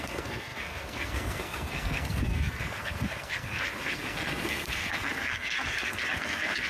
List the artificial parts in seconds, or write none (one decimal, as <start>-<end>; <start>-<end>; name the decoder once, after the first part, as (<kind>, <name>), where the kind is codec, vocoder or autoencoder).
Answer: 0.0-6.7 (codec, SNAC)